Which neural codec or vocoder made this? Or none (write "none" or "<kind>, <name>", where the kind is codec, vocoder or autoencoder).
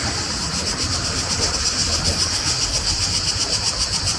vocoder, BigVGAN v2